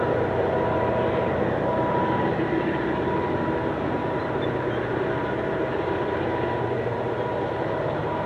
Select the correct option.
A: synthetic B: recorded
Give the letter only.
A